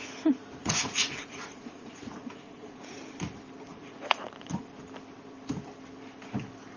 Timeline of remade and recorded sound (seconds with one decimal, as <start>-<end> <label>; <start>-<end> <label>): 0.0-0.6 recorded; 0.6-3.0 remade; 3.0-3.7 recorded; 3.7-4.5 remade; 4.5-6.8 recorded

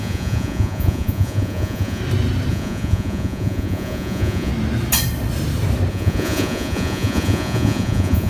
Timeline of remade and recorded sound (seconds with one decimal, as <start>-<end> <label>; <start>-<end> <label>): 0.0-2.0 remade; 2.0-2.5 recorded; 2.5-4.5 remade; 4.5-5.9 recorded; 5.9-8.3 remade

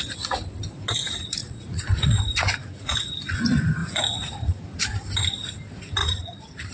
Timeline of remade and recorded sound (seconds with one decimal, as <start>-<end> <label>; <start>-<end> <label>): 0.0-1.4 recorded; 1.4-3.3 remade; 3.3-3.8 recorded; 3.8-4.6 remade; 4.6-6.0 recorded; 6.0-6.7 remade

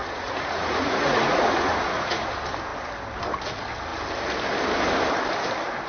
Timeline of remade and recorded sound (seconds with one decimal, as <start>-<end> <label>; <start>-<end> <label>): 0.0-2.3 remade; 2.3-5.9 recorded

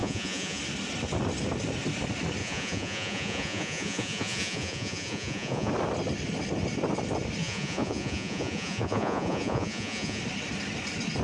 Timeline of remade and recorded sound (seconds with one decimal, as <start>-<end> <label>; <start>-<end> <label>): 0.0-0.6 remade; 0.6-2.4 recorded; 2.4-5.7 remade; 5.7-7.4 recorded; 7.4-10.2 remade; 10.2-11.2 recorded

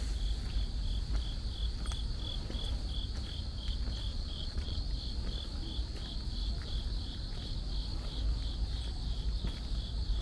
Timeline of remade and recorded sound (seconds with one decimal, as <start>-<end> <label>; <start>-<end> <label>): 0.0-4.1 recorded; 4.1-4.8 remade; 4.8-10.2 recorded

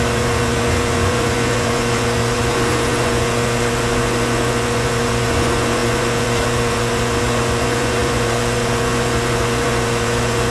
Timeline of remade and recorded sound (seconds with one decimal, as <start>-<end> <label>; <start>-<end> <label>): 0.0-10.5 remade

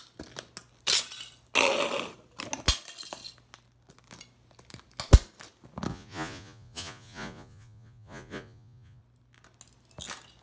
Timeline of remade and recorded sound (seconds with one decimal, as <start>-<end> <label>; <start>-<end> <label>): 0.0-5.9 recorded; 5.9-9.0 remade; 9.0-10.4 recorded